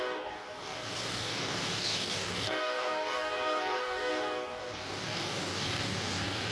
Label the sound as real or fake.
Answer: fake